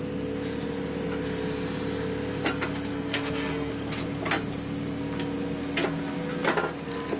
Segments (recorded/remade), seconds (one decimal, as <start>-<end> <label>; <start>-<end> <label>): 0.0-2.9 recorded; 2.9-3.7 remade; 3.7-7.2 recorded